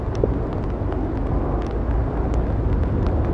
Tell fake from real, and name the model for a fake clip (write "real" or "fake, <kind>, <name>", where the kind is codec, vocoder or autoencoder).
real